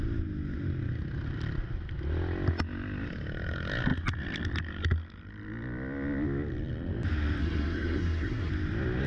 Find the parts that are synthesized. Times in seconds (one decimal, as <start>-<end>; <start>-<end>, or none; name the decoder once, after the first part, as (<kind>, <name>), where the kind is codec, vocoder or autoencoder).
7.4-8.5 (codec, SNAC)